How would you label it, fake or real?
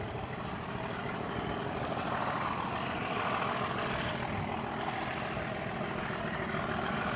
real